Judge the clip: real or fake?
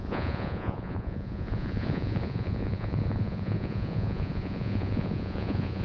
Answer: fake